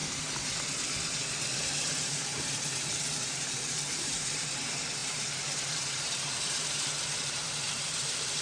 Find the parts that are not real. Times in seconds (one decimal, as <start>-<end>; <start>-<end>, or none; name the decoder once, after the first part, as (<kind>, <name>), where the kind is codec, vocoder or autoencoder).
1.6-8.4 (vocoder, BigVGAN v2)